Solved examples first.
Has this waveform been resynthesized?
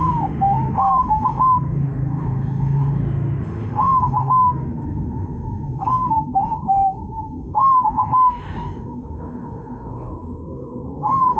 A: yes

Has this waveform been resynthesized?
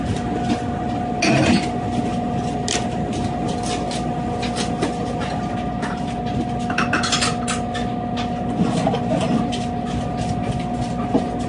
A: no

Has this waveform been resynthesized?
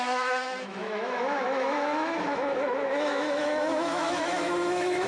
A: yes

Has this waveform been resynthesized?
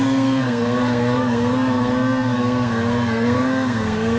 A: yes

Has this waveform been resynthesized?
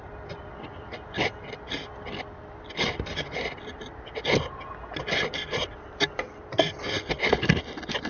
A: no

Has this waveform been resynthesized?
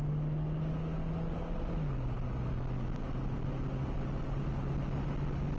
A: no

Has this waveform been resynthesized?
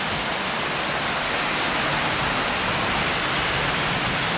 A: no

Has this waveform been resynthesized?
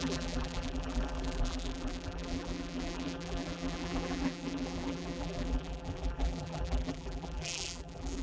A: yes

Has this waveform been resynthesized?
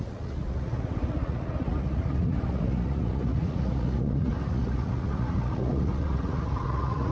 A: yes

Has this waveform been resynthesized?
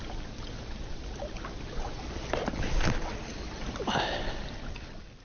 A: no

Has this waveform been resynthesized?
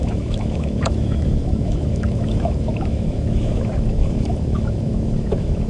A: yes